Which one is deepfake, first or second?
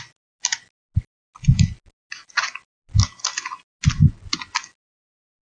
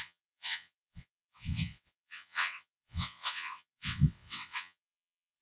second